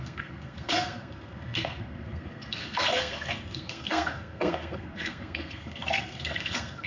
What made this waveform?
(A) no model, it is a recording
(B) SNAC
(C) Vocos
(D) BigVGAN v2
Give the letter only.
B